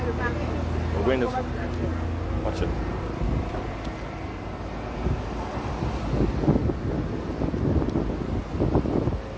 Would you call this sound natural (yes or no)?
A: yes